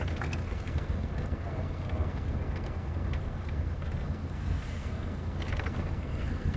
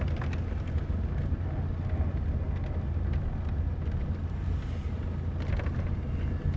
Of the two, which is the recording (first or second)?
second